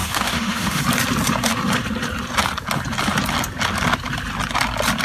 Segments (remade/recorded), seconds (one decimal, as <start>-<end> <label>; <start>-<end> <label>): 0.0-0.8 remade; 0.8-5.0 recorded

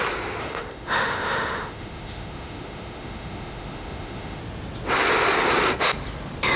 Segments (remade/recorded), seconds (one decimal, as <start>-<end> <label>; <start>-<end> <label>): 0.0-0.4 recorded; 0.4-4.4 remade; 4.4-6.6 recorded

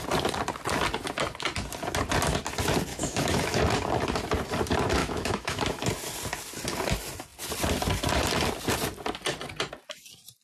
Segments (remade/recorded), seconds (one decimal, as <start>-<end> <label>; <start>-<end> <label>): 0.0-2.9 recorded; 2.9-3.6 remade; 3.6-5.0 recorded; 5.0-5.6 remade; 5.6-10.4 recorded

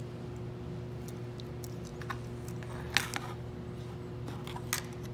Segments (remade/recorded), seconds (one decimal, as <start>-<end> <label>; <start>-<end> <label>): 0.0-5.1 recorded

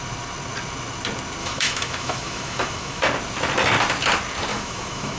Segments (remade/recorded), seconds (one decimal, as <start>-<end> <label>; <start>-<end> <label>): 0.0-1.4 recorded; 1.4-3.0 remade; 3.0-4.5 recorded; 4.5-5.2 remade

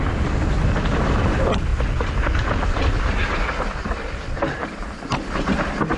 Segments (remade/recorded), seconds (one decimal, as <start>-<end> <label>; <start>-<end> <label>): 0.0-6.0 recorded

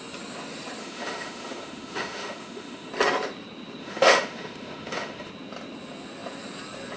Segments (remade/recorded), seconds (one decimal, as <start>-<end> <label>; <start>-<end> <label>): 0.0-0.8 recorded; 0.8-2.9 remade; 2.9-3.8 recorded; 3.8-5.3 remade; 5.3-7.0 recorded